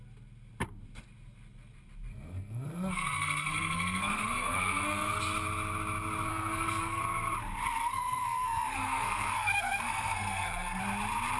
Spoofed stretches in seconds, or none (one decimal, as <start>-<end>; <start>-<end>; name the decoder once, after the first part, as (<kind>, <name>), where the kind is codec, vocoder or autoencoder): 2.1-5.2 (codec, SNAC); 6.3-7.0; 7.8-10.8